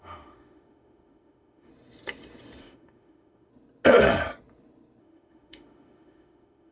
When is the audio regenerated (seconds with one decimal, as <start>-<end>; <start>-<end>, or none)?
0.0-1.7; 2.6-3.5; 5.0-6.7